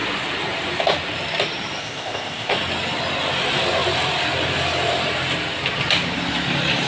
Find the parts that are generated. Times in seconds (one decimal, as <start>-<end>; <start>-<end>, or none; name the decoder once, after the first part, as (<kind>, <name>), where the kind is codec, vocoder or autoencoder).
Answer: 1.8-2.5 (codec, ZipCodec)